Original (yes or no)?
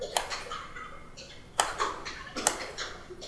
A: yes